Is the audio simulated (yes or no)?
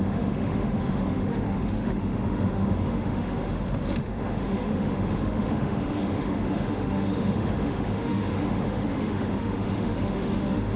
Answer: yes